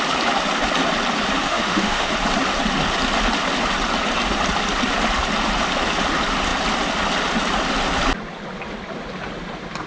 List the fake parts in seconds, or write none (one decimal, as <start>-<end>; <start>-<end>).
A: 1.4-2.1